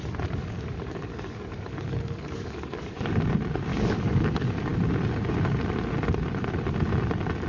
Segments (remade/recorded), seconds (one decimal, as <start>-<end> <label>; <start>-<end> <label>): 0.0-0.4 recorded; 0.4-3.3 remade; 3.3-3.7 recorded; 3.7-4.3 remade; 4.3-7.5 recorded

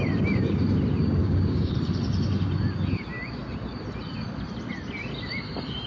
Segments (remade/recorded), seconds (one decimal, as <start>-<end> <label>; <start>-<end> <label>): 0.0-1.2 recorded; 1.2-1.7 remade; 1.7-5.9 recorded

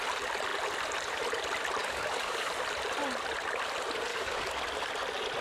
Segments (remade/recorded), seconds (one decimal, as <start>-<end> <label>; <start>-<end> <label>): 0.0-1.8 recorded; 1.8-2.5 remade; 2.5-4.1 recorded; 4.1-4.6 remade; 4.6-5.4 recorded

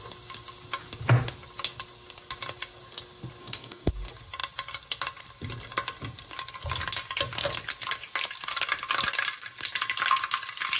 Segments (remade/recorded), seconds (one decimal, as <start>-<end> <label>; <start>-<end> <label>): 0.0-3.4 recorded; 3.4-3.9 remade; 3.9-10.8 recorded

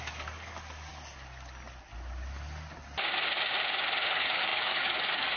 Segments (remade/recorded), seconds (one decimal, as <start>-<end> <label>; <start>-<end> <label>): 0.0-0.9 remade; 0.9-4.1 recorded; 4.1-5.4 remade